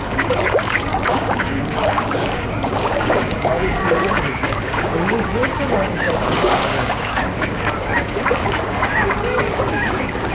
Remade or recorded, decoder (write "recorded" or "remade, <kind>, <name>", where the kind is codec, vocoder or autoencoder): remade, codec, DAC